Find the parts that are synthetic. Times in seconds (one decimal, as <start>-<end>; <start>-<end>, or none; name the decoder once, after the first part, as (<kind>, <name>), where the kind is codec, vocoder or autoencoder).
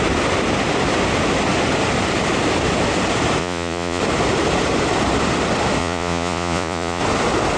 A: 3.4-4.0 (vocoder, Vocos); 5.8-7.0